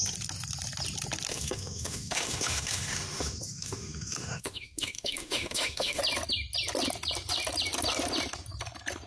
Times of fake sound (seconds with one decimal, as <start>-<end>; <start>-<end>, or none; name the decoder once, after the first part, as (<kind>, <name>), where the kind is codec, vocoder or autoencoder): 1.3-6.0 (autoencoder, DAC-VAE)